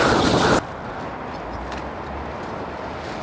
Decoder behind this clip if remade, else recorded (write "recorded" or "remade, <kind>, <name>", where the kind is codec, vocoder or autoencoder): recorded